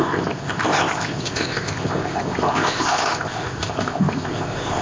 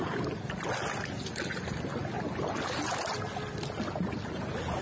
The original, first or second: second